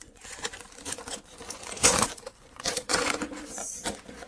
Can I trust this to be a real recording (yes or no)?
no